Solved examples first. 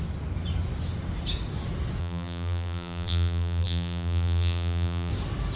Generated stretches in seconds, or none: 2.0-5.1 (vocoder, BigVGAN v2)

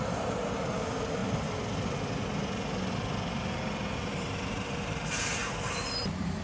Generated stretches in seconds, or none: 0.0-1.2 (vocoder, BigVGAN v2); 4.1-5.4; 6.0-6.4

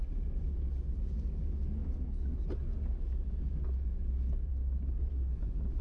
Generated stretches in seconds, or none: none

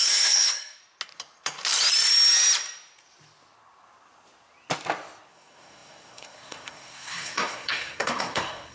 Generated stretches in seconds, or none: 0.0-0.8 (codec, SNAC); 5.3-8.7